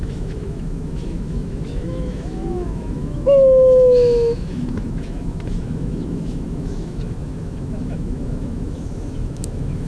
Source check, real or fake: fake